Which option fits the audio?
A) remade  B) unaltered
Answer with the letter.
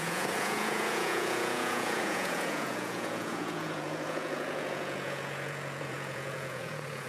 A